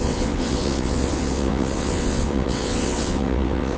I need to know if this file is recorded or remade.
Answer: remade